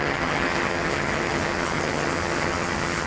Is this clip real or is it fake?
fake